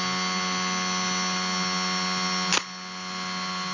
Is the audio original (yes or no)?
yes